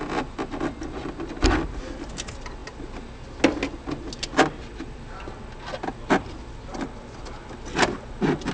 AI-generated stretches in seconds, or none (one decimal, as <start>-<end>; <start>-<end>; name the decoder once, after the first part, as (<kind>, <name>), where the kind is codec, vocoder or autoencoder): none